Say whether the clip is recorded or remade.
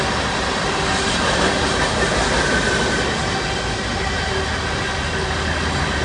recorded